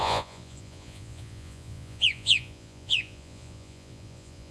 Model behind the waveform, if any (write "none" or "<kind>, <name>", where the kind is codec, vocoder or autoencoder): vocoder, Vocos